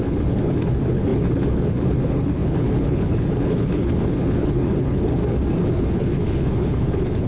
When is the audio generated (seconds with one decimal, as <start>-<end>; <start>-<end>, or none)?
0.0-5.2; 5.7-7.3